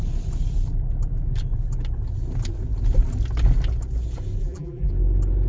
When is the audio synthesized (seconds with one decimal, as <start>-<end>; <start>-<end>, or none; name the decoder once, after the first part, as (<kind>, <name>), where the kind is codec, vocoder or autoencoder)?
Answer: 4.4-4.9 (vocoder, BigVGAN v2)